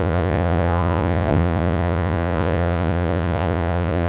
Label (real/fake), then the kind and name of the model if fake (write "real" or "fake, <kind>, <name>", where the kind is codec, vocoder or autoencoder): fake, vocoder, Vocos